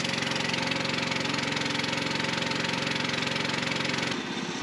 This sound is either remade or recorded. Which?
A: recorded